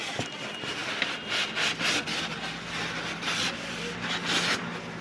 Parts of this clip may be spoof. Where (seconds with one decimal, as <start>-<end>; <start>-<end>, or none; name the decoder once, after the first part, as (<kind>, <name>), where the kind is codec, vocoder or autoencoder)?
none